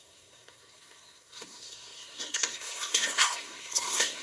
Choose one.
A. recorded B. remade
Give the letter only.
B